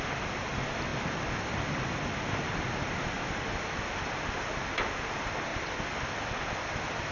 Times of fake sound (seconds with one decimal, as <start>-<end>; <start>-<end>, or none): none